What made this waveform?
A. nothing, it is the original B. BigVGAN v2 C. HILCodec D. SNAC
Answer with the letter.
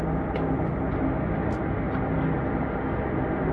A